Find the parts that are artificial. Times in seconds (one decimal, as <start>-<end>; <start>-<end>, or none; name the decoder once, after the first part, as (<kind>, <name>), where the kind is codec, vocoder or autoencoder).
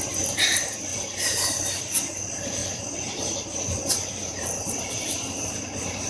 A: 2.6-6.1 (vocoder, BigVGAN v2)